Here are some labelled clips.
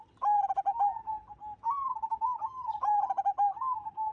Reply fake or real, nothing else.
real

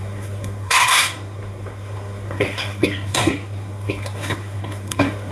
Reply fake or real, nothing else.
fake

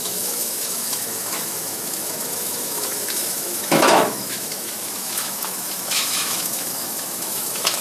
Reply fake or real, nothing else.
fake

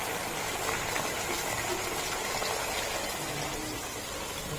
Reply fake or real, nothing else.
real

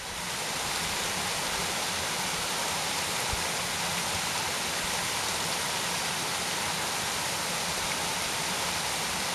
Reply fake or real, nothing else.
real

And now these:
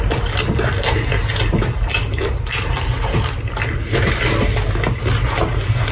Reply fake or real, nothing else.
real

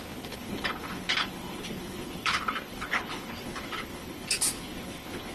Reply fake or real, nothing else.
fake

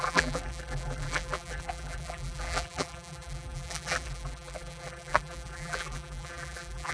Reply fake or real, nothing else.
fake